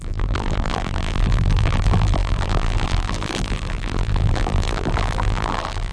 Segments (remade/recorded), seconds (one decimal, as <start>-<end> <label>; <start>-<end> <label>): 0.0-5.9 remade